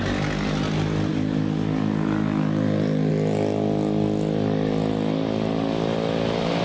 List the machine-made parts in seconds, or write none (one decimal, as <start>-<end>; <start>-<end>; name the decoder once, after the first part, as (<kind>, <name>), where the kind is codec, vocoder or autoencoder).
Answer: none